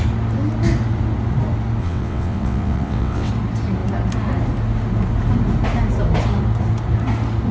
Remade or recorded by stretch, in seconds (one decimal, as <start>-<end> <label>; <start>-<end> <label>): 0.0-1.8 recorded; 1.8-3.3 remade; 3.3-7.5 recorded